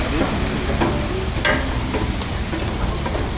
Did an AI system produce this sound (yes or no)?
no